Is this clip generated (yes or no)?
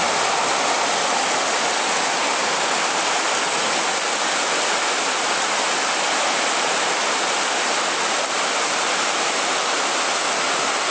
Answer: no